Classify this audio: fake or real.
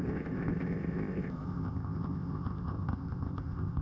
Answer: fake